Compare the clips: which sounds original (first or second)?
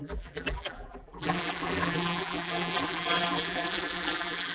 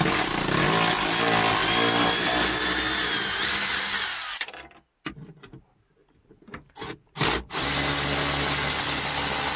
second